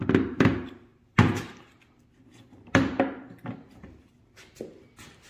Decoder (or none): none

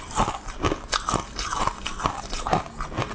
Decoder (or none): vocoder, BigVGAN v2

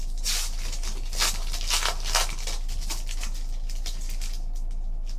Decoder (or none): none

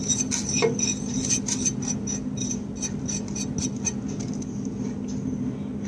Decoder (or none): none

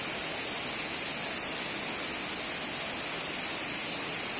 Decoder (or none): none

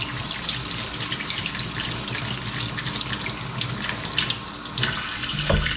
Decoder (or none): none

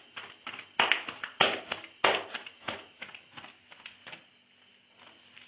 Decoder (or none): none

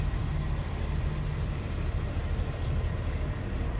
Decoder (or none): none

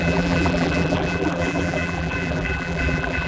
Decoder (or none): vocoder, BigVGAN v2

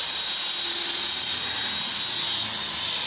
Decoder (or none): none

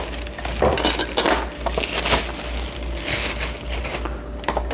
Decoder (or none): none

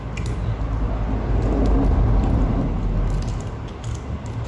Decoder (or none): none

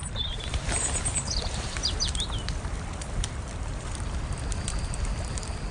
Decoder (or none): vocoder, BigVGAN v2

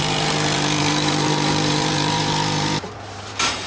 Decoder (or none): vocoder, BigVGAN v2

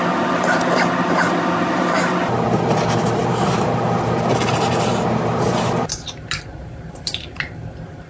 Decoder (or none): vocoder, BigVGAN v2